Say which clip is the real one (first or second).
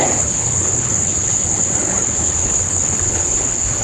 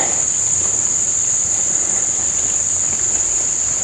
second